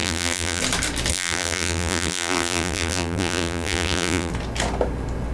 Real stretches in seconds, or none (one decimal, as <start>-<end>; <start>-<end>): 0.6-1.1; 4.3-5.3